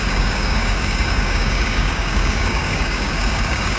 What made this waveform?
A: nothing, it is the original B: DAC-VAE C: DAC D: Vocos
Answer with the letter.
C